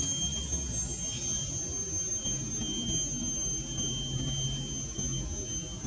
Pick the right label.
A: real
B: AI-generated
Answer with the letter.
A